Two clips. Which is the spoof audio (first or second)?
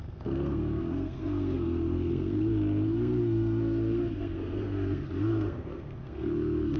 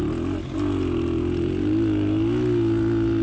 first